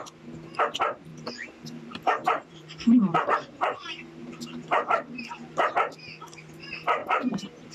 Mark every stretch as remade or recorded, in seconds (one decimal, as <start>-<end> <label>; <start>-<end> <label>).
0.0-1.1 recorded; 1.1-3.8 remade; 3.8-4.2 recorded; 4.2-5.7 remade; 5.7-7.0 recorded; 7.0-7.7 remade